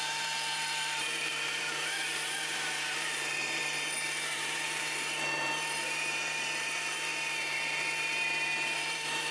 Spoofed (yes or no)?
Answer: yes